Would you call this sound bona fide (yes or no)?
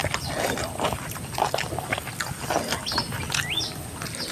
yes